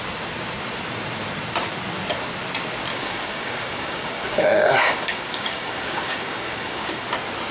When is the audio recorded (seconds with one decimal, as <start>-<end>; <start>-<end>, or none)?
0.0-2.9; 7.1-7.5